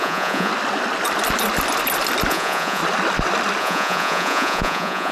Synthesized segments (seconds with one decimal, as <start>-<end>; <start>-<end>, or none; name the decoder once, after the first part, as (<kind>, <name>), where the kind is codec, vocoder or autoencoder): 0.0-0.5 (vocoder, Vocos); 2.3-2.8; 3.6-5.1